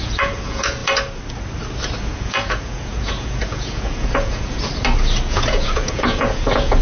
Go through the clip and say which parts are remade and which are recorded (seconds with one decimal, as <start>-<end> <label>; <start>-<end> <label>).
0.0-0.8 remade; 0.8-2.0 recorded; 2.0-4.7 remade; 4.7-5.3 recorded; 5.3-6.8 remade